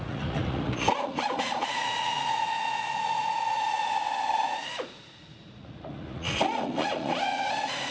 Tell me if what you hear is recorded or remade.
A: remade